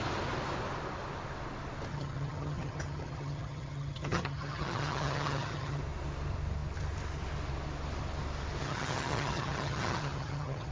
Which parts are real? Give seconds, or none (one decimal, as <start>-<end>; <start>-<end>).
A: 0.0-1.9; 5.8-8.6